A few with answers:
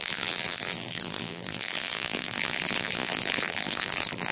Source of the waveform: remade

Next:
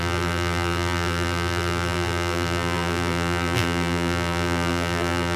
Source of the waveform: remade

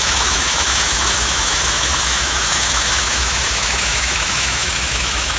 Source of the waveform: remade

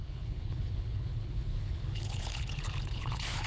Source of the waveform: remade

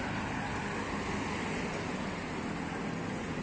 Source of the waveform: recorded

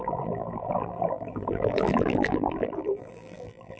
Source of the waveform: remade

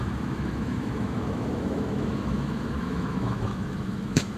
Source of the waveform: remade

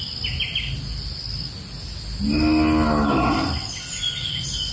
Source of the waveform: recorded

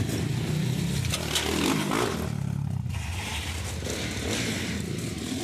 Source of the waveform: recorded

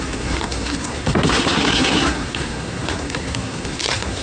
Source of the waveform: remade